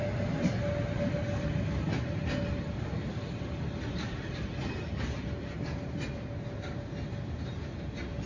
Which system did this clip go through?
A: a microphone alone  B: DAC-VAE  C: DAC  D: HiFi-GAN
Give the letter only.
A